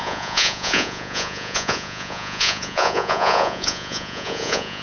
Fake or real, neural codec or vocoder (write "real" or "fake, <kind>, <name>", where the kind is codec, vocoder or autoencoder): fake, vocoder, Vocos